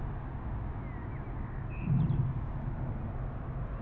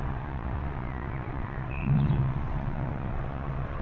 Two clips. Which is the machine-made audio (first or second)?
second